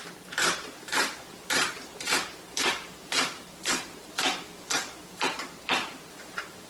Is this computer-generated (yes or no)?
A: yes